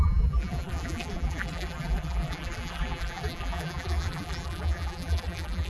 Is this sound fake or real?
fake